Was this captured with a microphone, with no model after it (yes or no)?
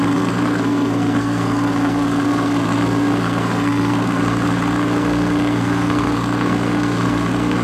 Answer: no